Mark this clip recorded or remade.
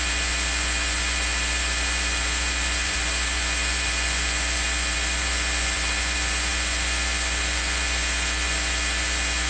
remade